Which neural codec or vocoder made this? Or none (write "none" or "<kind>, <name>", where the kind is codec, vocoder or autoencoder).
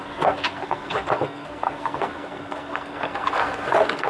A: codec, SNAC